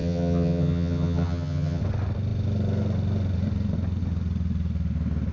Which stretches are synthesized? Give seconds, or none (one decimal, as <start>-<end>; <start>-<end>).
0.0-1.8

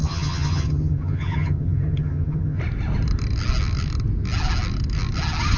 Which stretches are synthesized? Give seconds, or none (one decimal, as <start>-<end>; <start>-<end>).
0.0-2.6

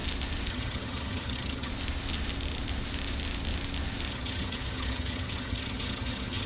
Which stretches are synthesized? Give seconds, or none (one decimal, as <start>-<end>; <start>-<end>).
0.5-1.7; 4.1-6.5

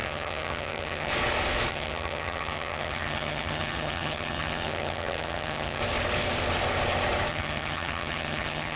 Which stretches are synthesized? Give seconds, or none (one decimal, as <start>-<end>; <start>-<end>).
0.0-1.1; 1.7-5.8; 7.3-8.8

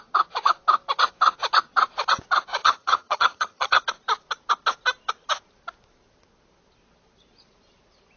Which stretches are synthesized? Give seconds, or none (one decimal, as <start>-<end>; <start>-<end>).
2.6-3.8

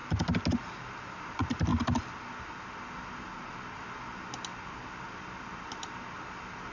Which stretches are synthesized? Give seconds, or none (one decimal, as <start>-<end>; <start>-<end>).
none

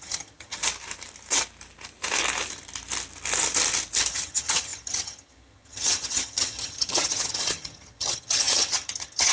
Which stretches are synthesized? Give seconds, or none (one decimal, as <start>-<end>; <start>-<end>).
0.0-0.6; 4.1-9.3